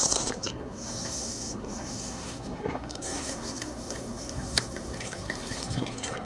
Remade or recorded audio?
remade